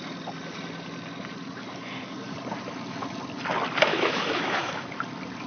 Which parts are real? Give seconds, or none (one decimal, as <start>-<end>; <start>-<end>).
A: 0.0-3.9; 4.9-5.5